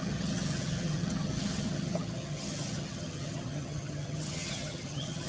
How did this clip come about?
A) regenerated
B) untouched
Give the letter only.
A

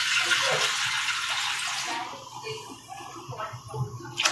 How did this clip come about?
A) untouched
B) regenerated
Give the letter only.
A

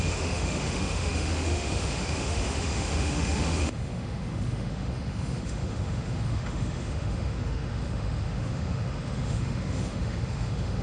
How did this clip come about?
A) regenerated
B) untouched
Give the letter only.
A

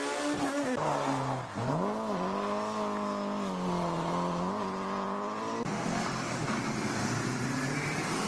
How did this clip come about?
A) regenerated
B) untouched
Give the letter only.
B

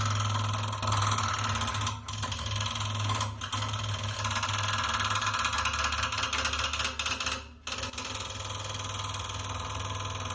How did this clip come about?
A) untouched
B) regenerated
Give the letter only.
A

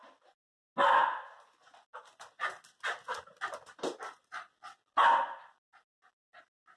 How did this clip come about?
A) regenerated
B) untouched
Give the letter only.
B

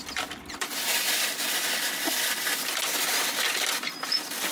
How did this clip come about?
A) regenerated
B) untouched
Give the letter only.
B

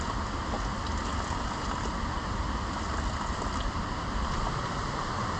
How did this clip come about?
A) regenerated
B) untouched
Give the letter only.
B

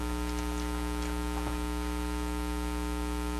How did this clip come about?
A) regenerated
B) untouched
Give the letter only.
B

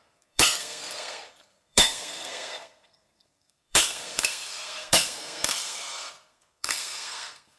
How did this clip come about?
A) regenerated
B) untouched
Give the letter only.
A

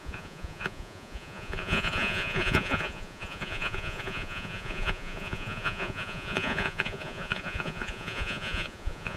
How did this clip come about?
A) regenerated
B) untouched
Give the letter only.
A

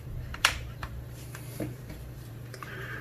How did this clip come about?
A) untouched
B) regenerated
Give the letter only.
B